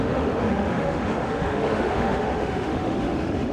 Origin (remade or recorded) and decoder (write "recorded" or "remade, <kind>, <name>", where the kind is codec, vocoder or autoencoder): remade, autoencoder, DAC-VAE